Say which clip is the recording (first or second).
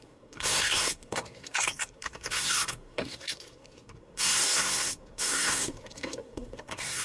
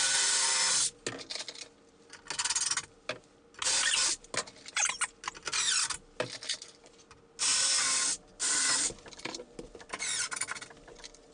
second